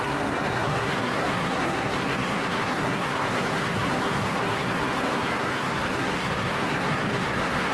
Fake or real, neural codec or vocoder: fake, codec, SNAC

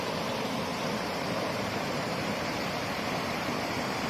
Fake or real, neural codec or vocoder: fake, vocoder, BigVGAN v2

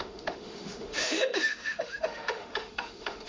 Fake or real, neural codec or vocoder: fake, autoencoder, DAC-VAE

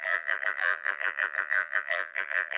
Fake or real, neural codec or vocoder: fake, vocoder, BigVGAN v2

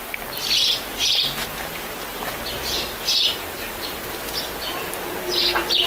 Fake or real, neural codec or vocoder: real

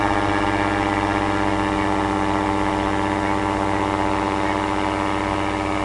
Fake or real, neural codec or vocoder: real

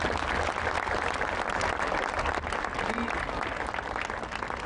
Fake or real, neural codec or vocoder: real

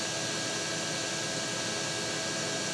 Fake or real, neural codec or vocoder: real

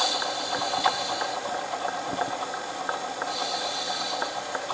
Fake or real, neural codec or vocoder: real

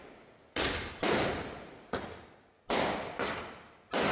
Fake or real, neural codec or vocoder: real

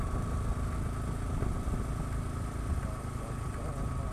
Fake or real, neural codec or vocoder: real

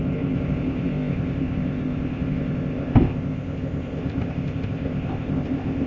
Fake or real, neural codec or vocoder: fake, codec, ZipCodec